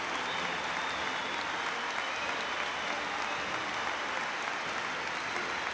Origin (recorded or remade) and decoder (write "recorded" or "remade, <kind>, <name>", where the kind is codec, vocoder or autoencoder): recorded